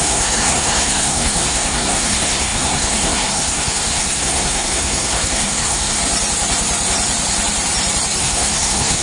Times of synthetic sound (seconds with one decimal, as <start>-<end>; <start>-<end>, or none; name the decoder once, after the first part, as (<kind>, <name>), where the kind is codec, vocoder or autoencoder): 0.0-6.0 (codec, SNAC); 8.2-9.0

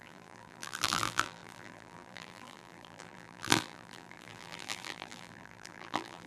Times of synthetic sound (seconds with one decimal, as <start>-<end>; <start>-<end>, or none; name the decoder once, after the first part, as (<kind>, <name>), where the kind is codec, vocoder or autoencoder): 0.0-6.3 (vocoder, BigVGAN v2)

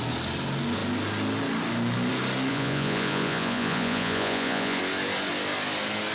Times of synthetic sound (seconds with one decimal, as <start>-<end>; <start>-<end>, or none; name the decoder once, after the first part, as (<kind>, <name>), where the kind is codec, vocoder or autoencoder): 2.5-4.8 (vocoder, Vocos)

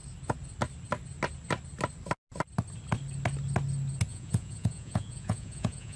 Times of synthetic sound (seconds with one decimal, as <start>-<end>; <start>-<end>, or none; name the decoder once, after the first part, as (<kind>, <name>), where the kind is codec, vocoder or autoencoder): 4.1-6.0 (vocoder, Vocos)